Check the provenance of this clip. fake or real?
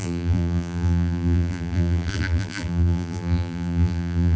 fake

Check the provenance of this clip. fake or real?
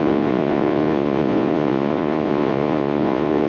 fake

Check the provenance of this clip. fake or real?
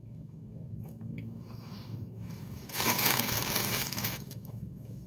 fake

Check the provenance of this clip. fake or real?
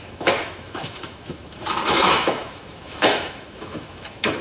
fake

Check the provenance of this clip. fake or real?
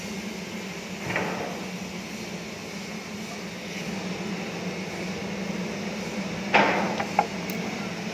real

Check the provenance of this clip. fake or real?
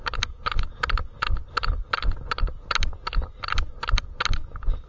real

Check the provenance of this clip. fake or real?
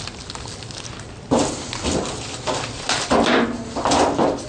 real